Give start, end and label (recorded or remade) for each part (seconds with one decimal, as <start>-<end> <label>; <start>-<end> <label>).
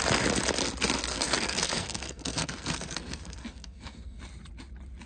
0.0-1.1 recorded; 1.1-4.2 remade; 4.2-5.1 recorded